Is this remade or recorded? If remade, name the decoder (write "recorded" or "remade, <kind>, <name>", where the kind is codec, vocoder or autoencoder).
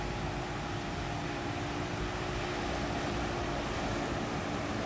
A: recorded